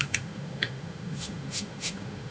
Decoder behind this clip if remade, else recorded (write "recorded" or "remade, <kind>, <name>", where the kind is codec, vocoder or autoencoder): remade, autoencoder, DAC-VAE